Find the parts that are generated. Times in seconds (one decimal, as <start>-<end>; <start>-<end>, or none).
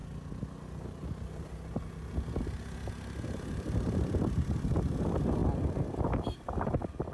3.1-7.1